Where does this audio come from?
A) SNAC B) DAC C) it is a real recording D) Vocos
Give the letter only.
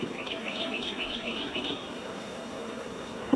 A